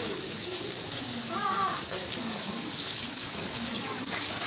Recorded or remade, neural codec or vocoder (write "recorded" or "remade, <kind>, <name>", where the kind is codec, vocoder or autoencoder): remade, codec, DAC